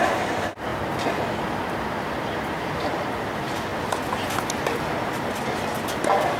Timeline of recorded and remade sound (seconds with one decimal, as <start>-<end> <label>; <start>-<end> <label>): 0.0-6.4 recorded